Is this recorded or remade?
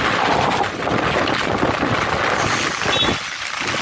recorded